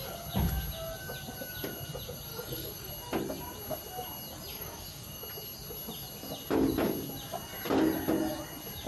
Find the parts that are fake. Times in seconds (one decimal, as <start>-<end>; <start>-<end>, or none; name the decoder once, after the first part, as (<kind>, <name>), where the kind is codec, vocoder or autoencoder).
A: 2.3-2.9 (codec, DAC); 4.5-5.2